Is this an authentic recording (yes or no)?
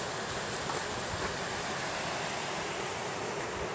yes